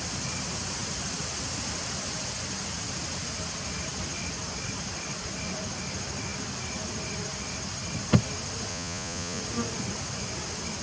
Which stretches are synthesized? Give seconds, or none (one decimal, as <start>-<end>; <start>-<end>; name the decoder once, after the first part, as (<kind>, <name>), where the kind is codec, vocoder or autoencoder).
8.7-9.4 (vocoder, Vocos)